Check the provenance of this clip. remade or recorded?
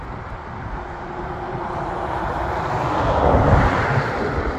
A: remade